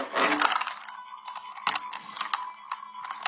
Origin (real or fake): real